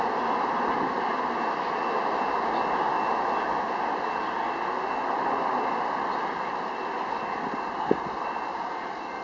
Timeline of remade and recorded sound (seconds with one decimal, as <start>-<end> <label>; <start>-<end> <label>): 0.0-9.2 recorded